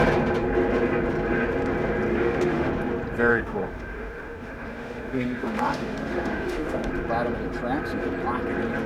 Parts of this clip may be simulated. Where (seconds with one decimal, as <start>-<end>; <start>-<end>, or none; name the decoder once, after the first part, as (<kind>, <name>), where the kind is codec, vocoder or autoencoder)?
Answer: 2.1-2.7 (autoencoder, DAC-VAE); 3.3-6.9